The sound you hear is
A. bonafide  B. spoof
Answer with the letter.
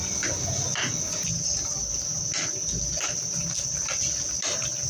A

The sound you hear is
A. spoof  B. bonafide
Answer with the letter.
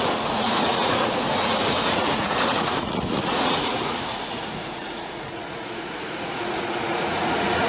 A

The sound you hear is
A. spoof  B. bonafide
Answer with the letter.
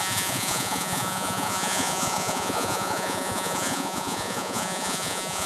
A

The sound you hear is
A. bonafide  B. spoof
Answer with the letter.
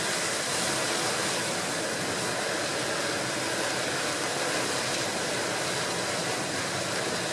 A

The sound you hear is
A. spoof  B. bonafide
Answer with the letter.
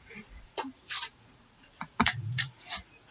A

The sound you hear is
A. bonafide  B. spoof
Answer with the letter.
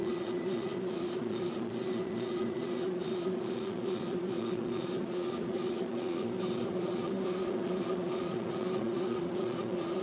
B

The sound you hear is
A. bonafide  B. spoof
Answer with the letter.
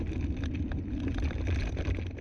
A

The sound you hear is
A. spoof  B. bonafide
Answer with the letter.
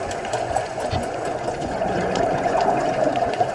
A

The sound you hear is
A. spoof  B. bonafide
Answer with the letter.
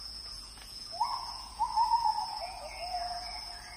A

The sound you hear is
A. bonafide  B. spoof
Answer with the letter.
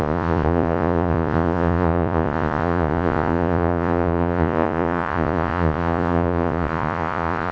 B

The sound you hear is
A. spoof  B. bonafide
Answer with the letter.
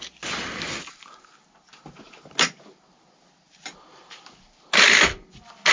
B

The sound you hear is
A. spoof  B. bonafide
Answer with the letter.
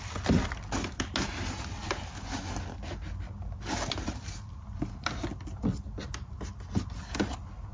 B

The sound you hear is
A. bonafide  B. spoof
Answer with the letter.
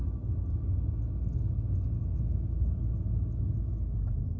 A